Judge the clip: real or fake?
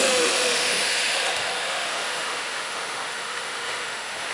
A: fake